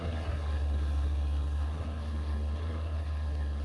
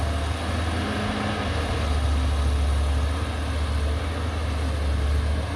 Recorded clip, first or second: second